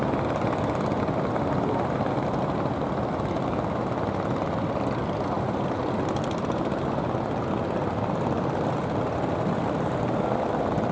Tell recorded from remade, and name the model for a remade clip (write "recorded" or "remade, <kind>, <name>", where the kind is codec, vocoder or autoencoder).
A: recorded